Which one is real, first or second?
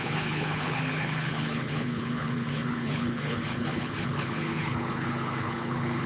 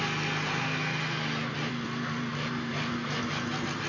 second